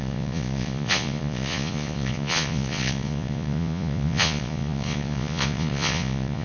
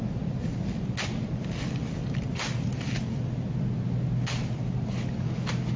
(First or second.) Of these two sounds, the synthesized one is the first